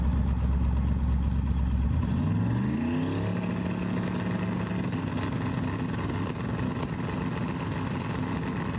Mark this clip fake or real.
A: real